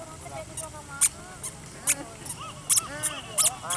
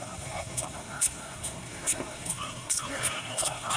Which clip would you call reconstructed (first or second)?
second